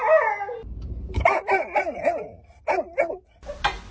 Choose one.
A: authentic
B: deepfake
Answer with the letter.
A